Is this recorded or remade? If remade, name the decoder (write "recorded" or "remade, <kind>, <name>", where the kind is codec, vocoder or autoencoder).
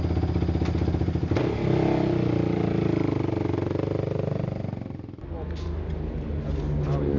recorded